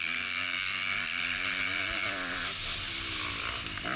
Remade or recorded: recorded